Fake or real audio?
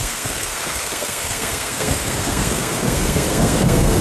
fake